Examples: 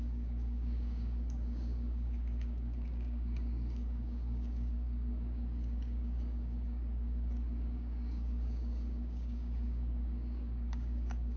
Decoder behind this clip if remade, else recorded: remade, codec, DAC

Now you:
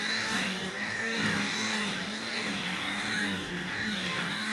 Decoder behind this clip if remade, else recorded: remade, codec, DAC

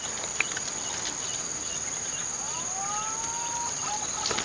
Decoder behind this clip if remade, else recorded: recorded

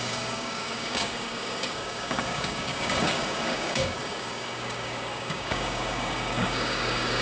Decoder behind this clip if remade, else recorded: remade, codec, DAC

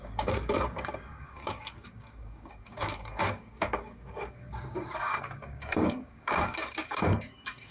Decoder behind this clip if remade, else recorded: remade, codec, DAC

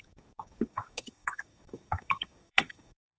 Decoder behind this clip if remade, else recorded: remade, codec, DAC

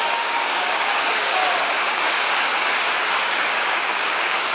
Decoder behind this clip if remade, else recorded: remade, codec, DAC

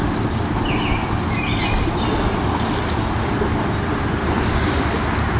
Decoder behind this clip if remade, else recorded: recorded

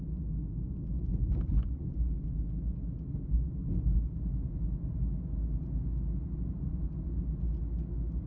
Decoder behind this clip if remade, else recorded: recorded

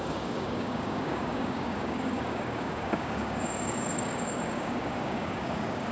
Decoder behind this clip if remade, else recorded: remade, codec, DAC